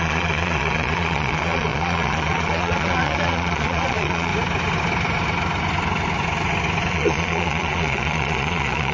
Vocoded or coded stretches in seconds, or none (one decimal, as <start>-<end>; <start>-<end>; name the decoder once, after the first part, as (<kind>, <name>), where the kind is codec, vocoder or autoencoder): 0.0-4.3 (vocoder, Vocos); 6.9-8.9